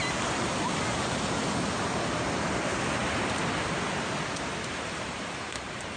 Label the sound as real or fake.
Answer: real